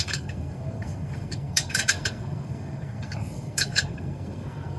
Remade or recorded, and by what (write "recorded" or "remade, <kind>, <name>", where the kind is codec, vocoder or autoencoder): remade, codec, SNAC